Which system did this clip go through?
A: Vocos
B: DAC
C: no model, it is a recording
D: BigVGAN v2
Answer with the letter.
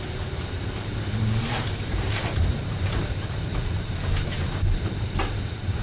D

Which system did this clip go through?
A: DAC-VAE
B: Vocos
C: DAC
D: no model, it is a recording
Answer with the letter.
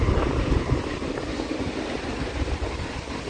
D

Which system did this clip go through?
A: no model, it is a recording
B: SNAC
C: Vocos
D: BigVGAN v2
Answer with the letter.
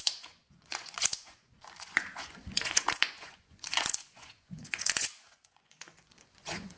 C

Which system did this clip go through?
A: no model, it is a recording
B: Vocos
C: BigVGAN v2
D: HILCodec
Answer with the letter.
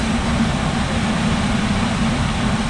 C